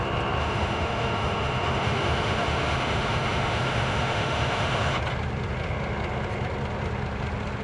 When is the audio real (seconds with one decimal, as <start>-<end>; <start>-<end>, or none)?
0.0-0.4; 5.0-7.6